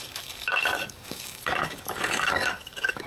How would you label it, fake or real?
fake